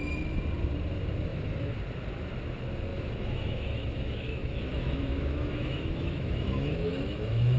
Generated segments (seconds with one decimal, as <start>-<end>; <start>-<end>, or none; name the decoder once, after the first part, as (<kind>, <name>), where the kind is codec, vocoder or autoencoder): 1.3-1.8 (autoencoder, DAC-VAE); 2.9-7.6